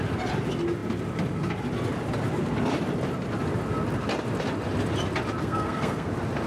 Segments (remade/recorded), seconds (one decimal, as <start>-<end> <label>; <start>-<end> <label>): 0.0-5.4 recorded; 5.4-6.1 remade; 6.1-6.5 recorded